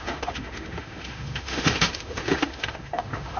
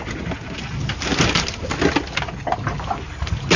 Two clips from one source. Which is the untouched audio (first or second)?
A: second